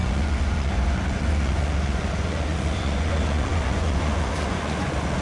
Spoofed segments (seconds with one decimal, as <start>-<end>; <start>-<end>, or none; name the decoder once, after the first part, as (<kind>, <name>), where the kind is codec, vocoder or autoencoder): 0.0-5.2 (vocoder, Vocos)